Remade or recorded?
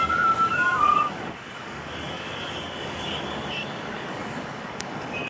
remade